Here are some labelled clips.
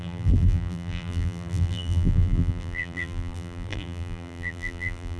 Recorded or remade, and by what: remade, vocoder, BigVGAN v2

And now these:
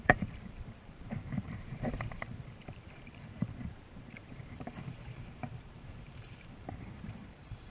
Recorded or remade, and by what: remade, vocoder, BigVGAN v2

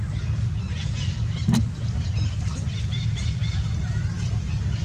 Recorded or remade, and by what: recorded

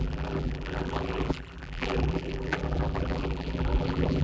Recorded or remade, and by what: remade, vocoder, BigVGAN v2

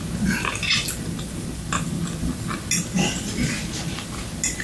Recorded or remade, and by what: recorded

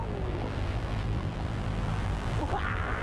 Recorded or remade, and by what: remade, vocoder, BigVGAN v2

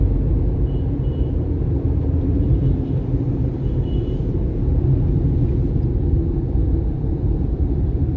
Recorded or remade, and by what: remade, vocoder, BigVGAN v2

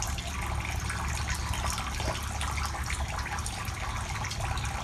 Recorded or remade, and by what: recorded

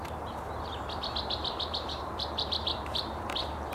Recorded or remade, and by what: remade, vocoder, BigVGAN v2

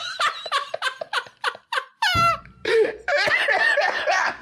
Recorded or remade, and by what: remade, vocoder, BigVGAN v2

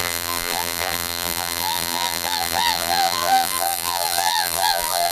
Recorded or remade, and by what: remade, vocoder, BigVGAN v2